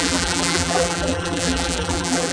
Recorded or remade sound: remade